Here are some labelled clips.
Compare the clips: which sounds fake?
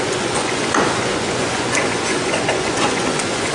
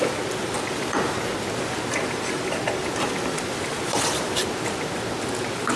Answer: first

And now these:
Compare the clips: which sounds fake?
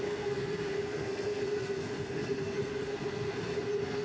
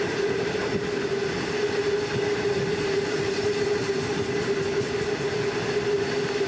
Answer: first